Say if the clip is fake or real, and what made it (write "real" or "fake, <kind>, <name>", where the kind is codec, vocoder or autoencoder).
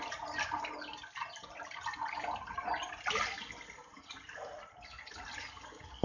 real